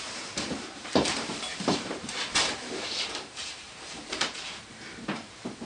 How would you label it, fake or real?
fake